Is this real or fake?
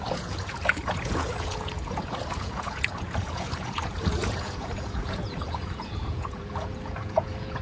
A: fake